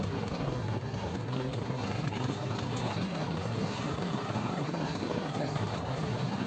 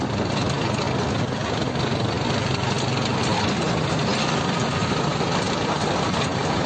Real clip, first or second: second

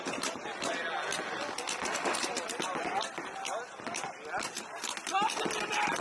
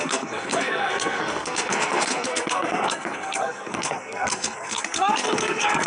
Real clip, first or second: first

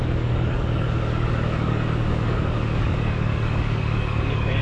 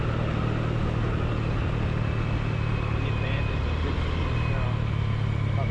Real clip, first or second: second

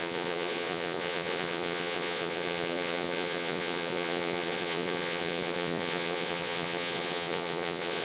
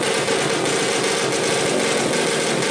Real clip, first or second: second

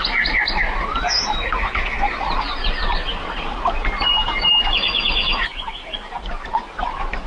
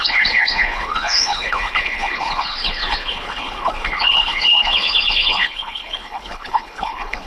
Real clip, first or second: first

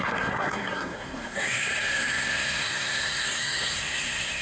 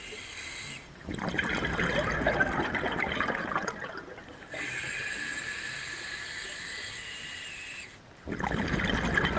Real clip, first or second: second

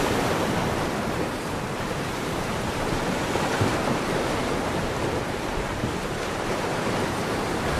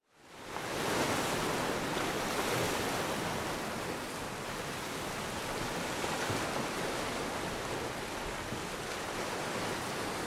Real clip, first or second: second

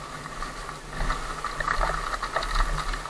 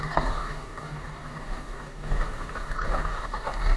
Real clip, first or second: first